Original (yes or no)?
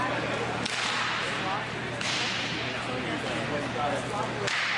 yes